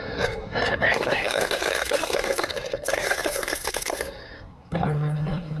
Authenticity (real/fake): fake